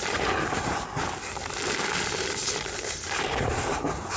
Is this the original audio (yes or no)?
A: yes